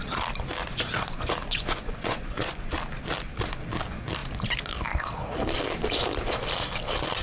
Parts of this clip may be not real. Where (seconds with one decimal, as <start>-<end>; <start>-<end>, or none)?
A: 0.7-2.7